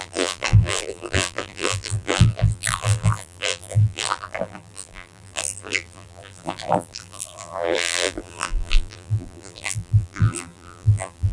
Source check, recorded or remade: remade